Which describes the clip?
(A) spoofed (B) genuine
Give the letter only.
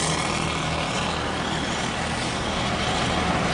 B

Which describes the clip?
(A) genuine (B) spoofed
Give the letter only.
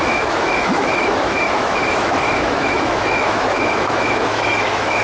B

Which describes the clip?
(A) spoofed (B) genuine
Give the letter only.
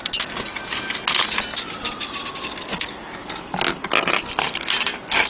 B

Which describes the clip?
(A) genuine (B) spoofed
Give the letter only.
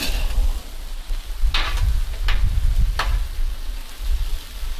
A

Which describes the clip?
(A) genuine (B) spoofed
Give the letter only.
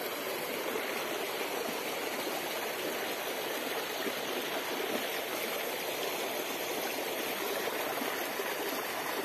A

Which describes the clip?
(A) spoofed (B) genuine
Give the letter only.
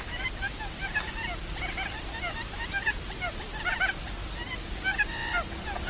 B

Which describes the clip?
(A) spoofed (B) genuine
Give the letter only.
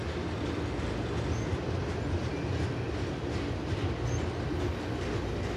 B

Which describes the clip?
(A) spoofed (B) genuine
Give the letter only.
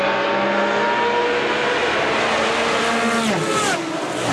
B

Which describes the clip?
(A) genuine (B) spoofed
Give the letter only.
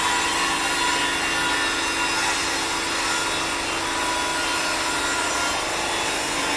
A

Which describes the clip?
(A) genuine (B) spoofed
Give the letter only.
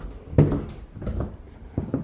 A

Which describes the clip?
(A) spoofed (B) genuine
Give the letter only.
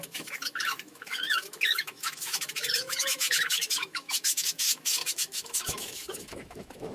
A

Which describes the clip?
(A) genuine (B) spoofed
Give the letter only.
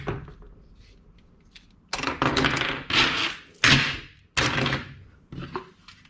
A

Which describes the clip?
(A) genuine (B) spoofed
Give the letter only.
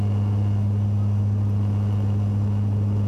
A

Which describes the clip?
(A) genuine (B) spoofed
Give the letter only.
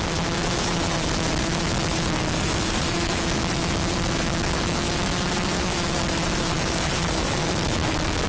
B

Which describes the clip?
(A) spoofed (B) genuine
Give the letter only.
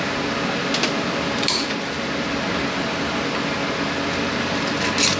B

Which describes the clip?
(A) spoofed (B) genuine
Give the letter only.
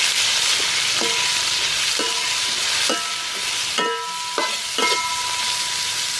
B